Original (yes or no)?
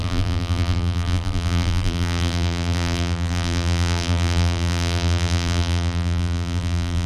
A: no